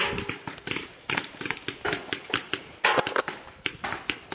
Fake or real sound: real